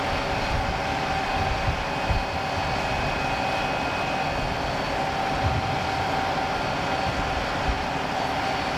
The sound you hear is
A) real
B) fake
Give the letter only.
A